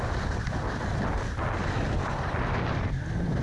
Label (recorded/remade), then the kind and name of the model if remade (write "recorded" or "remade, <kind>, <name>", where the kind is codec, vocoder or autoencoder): recorded